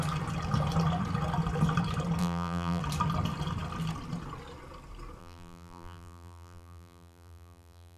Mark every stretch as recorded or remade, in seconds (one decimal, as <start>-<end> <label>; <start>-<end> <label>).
0.0-2.2 recorded; 2.2-2.8 remade; 2.8-5.2 recorded; 5.2-8.0 remade

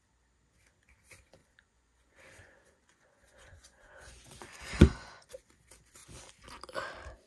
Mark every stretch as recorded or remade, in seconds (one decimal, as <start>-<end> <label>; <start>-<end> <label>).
0.0-1.4 recorded; 1.4-5.3 remade; 5.3-7.3 recorded

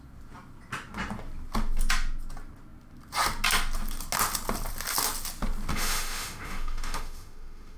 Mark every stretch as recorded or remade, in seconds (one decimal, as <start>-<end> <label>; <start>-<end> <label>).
0.0-5.7 recorded; 5.7-7.8 remade

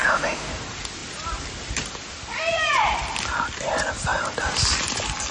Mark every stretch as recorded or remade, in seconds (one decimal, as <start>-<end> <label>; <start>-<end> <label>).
0.0-0.5 remade; 0.5-5.3 recorded